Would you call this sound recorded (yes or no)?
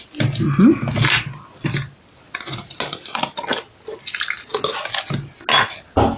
yes